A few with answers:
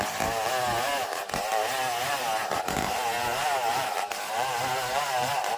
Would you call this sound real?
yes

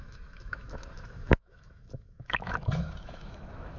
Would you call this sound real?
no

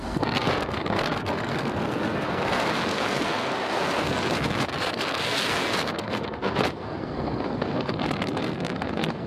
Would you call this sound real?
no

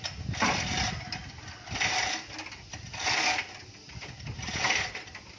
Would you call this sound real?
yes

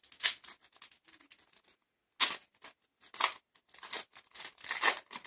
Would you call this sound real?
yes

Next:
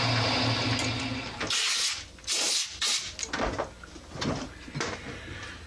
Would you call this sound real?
yes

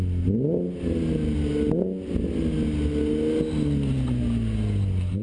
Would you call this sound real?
yes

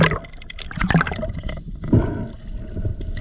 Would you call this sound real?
yes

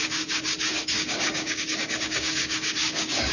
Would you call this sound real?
no